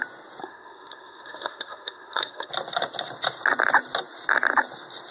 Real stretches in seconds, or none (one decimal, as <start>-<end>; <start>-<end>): 0.0-0.4; 2.5-5.1